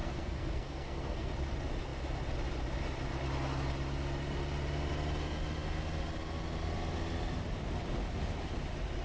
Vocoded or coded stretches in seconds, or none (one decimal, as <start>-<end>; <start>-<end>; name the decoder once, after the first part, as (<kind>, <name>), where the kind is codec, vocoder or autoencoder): 0.0-1.3 (codec, SNAC)